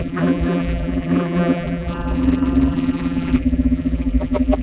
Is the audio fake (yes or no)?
yes